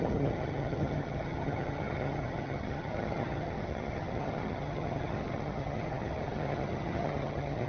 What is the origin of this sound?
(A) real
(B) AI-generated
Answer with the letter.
B